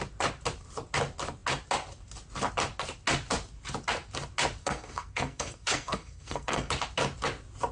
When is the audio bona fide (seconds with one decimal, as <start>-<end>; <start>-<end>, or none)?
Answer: 0.0-4.6; 6.7-7.7